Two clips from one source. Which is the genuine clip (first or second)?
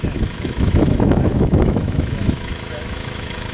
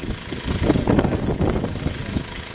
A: second